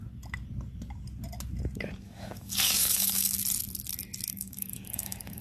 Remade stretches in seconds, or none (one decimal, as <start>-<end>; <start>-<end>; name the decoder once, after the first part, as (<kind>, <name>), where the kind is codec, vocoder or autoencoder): 2.0-3.4 (codec, DAC); 4.3-5.4